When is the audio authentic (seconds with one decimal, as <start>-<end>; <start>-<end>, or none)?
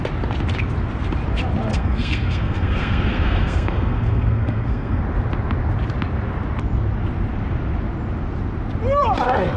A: 0.0-1.7; 5.0-9.6